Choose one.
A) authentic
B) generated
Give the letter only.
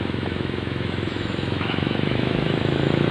B